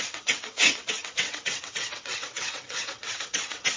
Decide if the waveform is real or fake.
fake